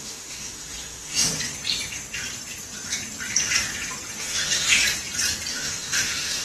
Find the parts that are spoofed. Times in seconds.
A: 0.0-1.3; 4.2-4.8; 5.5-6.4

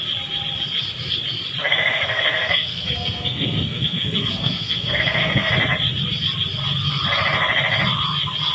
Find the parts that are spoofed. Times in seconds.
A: 1.6-5.5

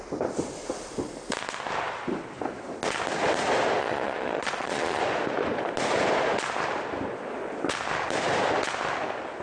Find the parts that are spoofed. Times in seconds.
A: 3.8-5.0

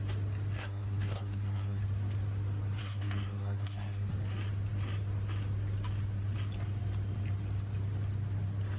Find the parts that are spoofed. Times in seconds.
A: 0.6-1.9; 2.8-4.1

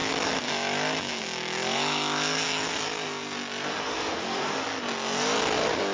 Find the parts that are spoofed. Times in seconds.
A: 0.0-2.7

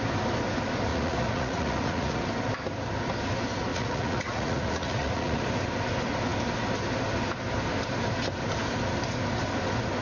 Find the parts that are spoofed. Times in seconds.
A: 0.9-2.2; 3.7-5.4

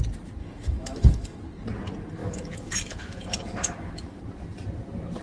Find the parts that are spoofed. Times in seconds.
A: 0.4-1.4; 2.2-4.2